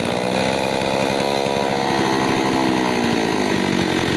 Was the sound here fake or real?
real